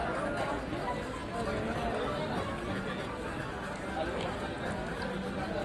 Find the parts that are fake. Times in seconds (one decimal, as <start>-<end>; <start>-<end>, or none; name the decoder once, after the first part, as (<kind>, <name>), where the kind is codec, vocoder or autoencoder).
none